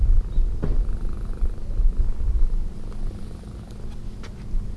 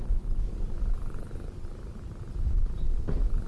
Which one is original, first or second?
first